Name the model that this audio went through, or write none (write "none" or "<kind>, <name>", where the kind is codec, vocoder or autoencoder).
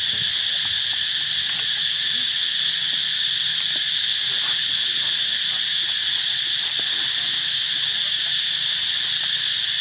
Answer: none